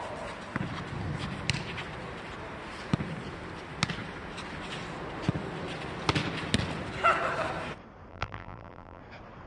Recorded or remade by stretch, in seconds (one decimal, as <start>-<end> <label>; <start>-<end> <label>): 0.0-8.1 recorded; 8.1-9.0 remade; 9.0-9.5 recorded